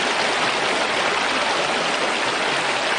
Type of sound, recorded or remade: recorded